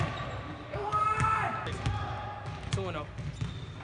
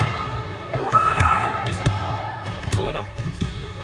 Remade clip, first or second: second